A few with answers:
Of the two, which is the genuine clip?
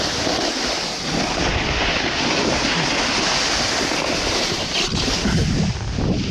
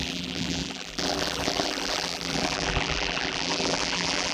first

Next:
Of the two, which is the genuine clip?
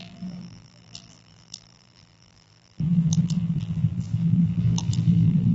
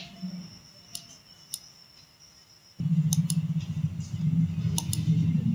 second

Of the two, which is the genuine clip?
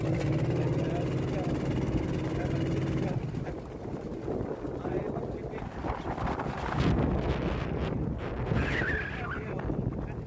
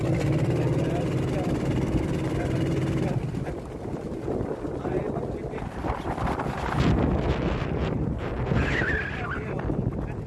first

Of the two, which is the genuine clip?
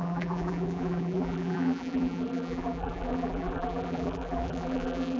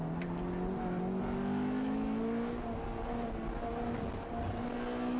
second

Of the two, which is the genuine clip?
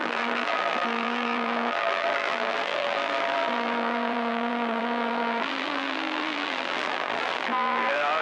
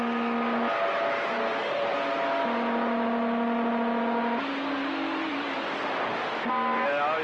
second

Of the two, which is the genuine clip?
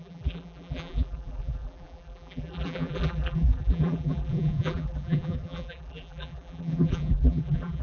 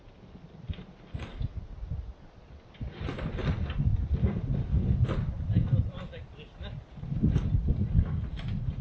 second